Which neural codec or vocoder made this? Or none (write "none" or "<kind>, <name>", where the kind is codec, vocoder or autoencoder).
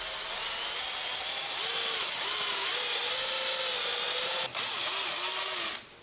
none